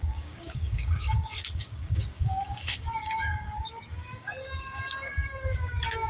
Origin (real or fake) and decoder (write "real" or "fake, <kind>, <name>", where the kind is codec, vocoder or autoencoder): fake, codec, DAC